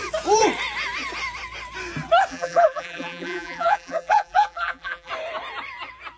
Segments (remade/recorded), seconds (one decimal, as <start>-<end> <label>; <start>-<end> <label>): 0.0-2.3 recorded; 2.3-5.1 remade; 5.1-6.2 recorded